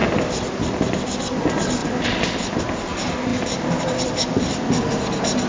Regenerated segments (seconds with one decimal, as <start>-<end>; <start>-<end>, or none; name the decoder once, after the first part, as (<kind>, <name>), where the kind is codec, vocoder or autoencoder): 0.0-0.8 (vocoder, BigVGAN v2); 1.8-2.5; 3.3-4.0